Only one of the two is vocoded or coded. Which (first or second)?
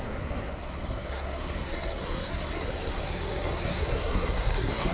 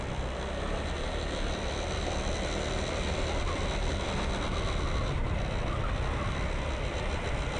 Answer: first